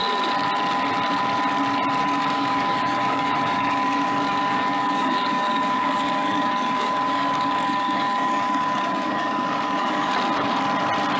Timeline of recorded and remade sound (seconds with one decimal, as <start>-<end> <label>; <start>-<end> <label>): 0.0-2.0 recorded; 2.0-10.1 remade; 10.1-11.2 recorded